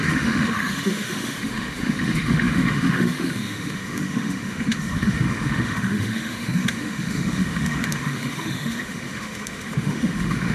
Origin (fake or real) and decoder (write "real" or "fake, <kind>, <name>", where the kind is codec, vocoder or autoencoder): fake, autoencoder, DAC-VAE